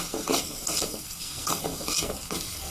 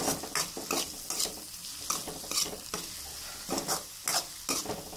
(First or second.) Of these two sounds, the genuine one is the second